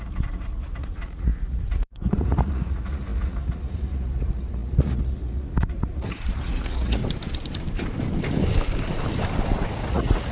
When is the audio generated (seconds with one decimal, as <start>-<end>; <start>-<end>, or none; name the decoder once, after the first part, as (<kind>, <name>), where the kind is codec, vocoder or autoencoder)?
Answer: 0.0-7.0 (vocoder, Vocos); 9.9-10.3